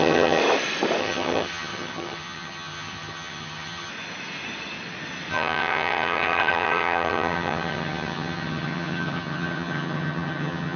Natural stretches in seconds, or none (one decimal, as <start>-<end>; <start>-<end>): 0.4-1.0; 3.9-5.3